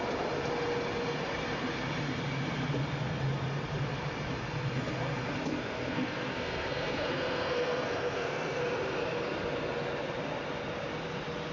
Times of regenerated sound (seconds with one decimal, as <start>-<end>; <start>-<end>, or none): 5.5-8.6